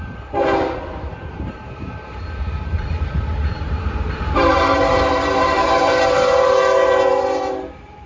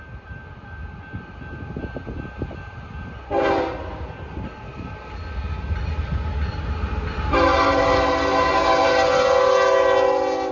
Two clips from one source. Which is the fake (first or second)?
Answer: first